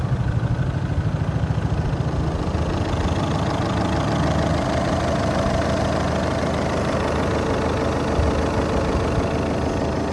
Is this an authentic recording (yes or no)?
yes